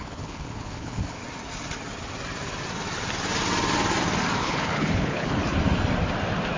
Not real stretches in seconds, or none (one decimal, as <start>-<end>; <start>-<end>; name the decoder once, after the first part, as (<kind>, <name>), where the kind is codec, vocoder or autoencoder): 0.0-1.2 (codec, HILCodec); 4.4-5.4